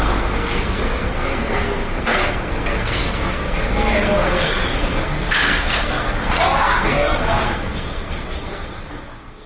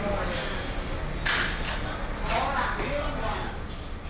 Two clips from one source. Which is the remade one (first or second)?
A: first